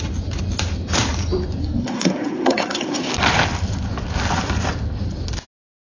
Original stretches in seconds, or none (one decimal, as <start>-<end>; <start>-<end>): 0.0-1.6; 3.1-5.9